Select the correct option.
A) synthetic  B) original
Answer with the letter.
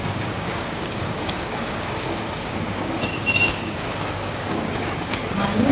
A